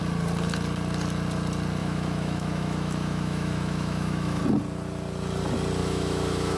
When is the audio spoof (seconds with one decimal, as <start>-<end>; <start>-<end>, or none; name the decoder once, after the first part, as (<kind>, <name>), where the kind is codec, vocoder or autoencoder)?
1.8-4.4 (autoencoder, DAC-VAE); 5.8-6.6